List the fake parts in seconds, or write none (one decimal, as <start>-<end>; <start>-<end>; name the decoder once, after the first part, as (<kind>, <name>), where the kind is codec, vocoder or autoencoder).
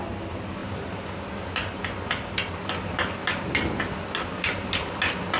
none